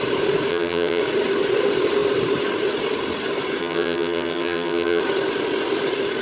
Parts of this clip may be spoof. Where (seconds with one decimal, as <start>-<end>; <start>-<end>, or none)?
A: 0.5-1.0; 3.6-5.0